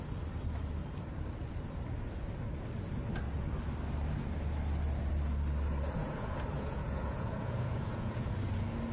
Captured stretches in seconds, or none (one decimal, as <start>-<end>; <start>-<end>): 0.0-6.0; 8.3-8.9